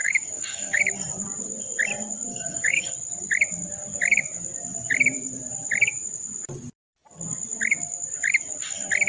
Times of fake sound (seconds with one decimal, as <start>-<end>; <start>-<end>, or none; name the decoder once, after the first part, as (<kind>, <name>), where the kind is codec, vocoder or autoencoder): 0.0-0.8 (codec, DAC); 2.3-2.9

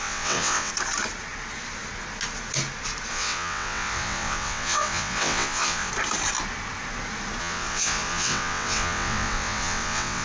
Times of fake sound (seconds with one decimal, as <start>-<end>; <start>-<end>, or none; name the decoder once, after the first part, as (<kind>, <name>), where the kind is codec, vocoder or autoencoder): 0.0-0.7 (vocoder, WaveNeXt); 3.1-5.9; 7.4-10.2

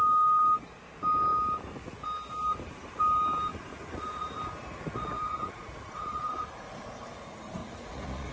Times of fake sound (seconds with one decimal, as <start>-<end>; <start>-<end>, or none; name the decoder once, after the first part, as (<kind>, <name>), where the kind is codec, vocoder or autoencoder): 3.5-4.4 (vocoder, Vocos); 4.9-6.5; 7.6-8.3

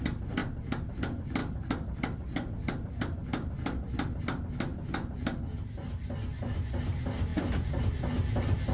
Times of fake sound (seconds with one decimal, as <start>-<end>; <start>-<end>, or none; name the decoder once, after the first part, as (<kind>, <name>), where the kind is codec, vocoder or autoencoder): none

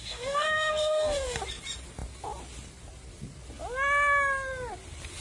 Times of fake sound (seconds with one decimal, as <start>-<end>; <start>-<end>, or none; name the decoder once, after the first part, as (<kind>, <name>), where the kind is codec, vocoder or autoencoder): 0.0-1.4 (codec, DAC)

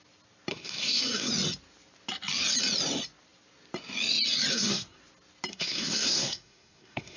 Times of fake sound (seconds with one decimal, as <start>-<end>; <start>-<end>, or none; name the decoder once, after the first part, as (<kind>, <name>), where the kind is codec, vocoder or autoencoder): 0.5-1.3 (codec, SNAC); 4.5-5.0; 5.5-7.2

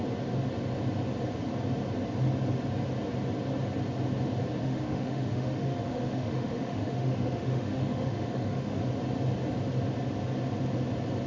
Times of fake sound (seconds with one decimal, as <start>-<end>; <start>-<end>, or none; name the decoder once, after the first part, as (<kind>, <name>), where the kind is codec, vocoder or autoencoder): 4.6-8.8 (autoencoder, DAC-VAE)

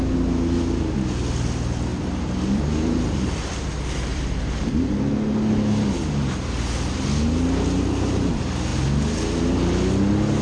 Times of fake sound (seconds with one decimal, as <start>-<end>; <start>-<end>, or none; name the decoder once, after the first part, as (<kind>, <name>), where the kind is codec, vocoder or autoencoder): 1.9-4.4 (vocoder, BigVGAN v2)